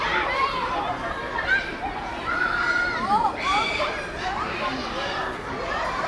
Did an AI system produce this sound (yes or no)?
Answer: yes